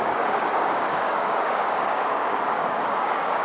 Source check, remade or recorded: remade